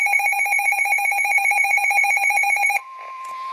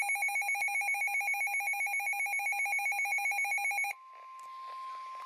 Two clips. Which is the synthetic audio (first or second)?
first